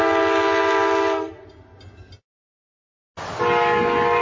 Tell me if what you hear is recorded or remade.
recorded